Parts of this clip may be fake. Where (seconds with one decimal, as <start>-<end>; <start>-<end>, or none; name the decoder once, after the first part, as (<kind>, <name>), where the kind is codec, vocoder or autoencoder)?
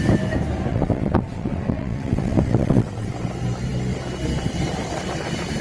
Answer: 0.7-3.1 (vocoder, WaveNeXt)